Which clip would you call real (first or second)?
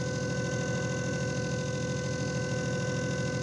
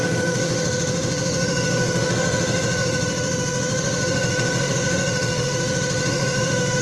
first